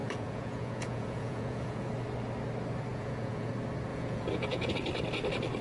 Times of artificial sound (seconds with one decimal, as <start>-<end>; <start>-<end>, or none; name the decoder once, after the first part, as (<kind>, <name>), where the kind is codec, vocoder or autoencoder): 0.0-1.9 (vocoder, Vocos); 2.9-3.5; 3.9-4.7

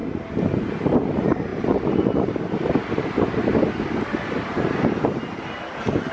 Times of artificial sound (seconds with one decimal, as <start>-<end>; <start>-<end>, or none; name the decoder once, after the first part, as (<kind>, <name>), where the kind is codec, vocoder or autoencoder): none

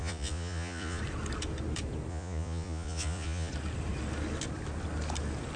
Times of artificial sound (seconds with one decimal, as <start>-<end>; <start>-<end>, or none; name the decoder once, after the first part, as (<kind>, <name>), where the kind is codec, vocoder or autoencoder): 0.0-1.0 (vocoder, Vocos); 2.1-3.5

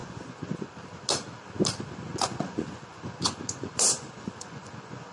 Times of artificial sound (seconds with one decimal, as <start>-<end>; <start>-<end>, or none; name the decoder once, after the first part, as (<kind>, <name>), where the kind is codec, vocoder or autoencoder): 0.0-0.7 (vocoder, Vocos); 2.1-5.1

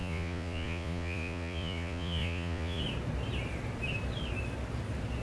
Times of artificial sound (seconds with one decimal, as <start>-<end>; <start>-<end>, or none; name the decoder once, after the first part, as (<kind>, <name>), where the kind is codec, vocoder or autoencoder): 0.0-2.8 (vocoder, Vocos)